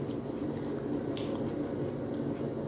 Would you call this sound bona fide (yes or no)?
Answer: yes